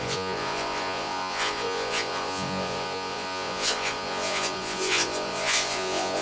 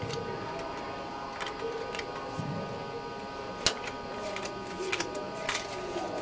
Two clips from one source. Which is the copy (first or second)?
first